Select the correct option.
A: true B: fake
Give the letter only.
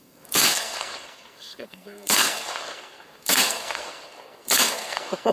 B